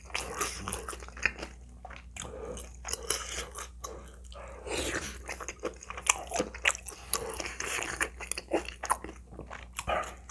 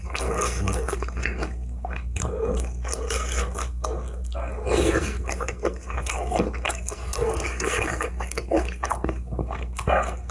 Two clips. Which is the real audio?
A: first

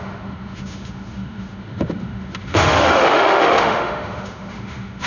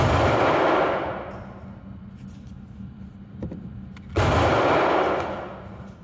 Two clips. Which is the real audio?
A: second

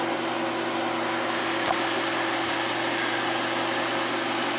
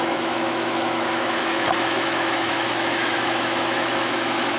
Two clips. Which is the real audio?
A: first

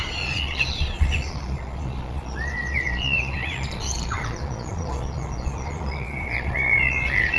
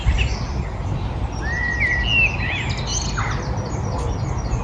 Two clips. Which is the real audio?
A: second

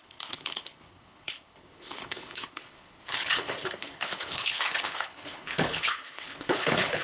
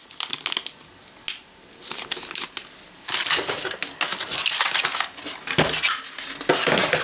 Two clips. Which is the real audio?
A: second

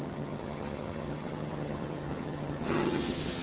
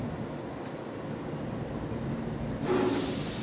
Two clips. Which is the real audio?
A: second